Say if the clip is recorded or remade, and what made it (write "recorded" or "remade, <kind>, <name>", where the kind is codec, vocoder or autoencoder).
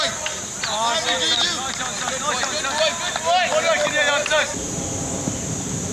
recorded